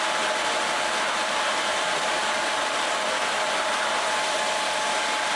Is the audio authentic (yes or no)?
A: yes